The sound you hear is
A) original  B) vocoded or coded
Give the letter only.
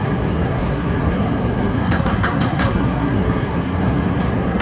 B